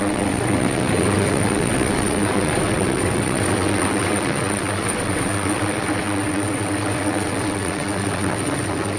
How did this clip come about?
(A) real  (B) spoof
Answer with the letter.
B